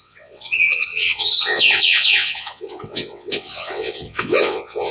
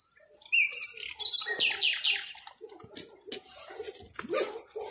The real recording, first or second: second